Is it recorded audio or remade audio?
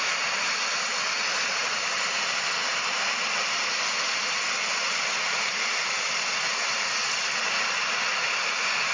recorded